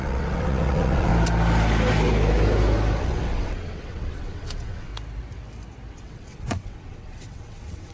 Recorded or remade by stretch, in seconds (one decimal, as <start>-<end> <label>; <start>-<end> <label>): 0.0-1.1 remade; 1.1-3.0 recorded; 3.0-4.9 remade; 4.9-5.9 recorded; 5.9-7.9 remade